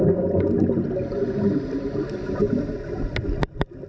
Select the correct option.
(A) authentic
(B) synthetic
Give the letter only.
A